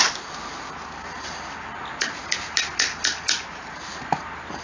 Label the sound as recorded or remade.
recorded